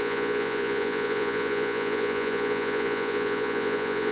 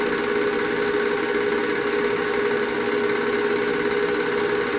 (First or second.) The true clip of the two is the second